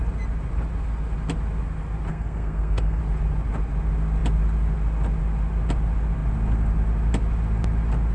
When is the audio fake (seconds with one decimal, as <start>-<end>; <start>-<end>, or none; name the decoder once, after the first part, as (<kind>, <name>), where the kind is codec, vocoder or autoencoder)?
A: 2.1-3.0 (codec, SNAC)